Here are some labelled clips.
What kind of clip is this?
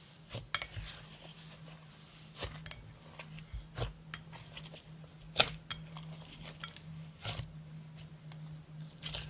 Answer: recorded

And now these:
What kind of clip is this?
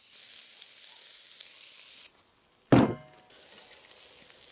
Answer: recorded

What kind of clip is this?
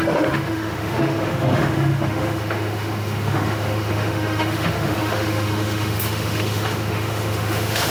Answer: remade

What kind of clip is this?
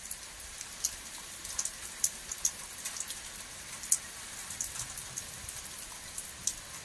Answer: recorded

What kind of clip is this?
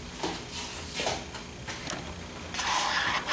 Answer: recorded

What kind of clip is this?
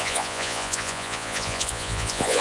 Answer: remade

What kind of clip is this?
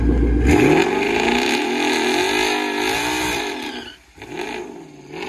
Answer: recorded